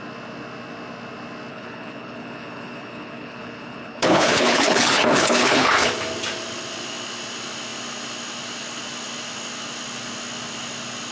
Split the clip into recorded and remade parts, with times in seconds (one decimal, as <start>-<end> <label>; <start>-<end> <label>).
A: 0.0-1.5 recorded; 1.5-5.9 remade; 5.9-11.1 recorded